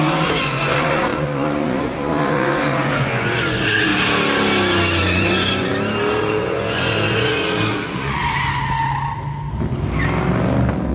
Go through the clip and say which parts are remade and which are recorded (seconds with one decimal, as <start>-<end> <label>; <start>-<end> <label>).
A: 0.0-3.9 remade; 3.9-5.0 recorded; 5.0-5.7 remade; 5.7-6.2 recorded; 6.2-8.2 remade; 8.2-10.9 recorded